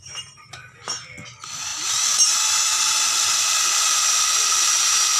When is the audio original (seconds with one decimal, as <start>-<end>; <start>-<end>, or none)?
0.0-5.2